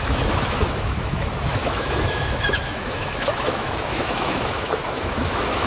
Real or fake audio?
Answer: fake